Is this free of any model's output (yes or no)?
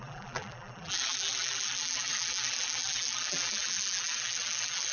no